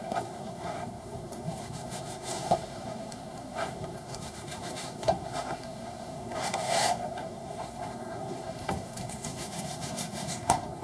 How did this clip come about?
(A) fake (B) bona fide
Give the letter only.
A